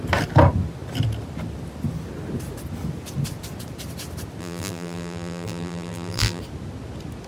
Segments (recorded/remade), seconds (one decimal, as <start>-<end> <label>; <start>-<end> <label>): 0.0-4.4 recorded; 4.4-6.4 remade; 6.4-7.3 recorded